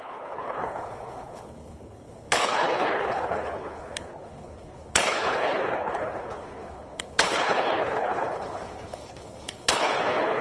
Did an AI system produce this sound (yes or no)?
yes